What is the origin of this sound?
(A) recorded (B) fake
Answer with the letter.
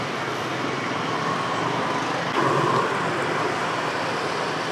A